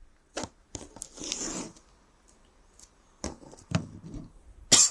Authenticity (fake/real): real